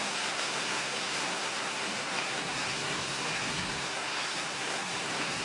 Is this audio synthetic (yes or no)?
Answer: yes